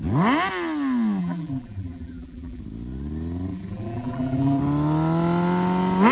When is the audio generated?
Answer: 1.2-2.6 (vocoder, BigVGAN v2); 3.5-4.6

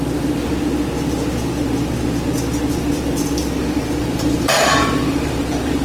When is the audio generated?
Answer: 0.0-0.5 (vocoder, BigVGAN v2); 4.0-5.8

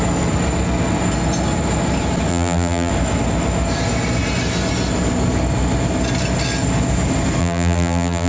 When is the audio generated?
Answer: 2.3-2.9 (vocoder, BigVGAN v2); 7.4-8.3

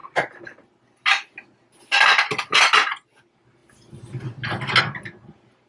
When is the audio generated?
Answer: none

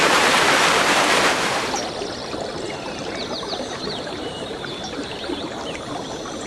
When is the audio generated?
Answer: 0.0-1.4 (vocoder, BigVGAN v2); 2.2-5.6

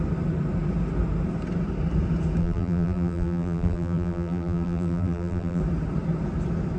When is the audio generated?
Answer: 2.4-5.6 (vocoder, BigVGAN v2)

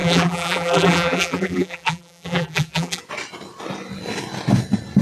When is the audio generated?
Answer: 0.0-3.0 (vocoder, BigVGAN v2)

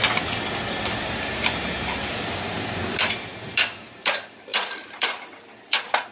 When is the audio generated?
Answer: 0.8-6.1 (vocoder, BigVGAN v2)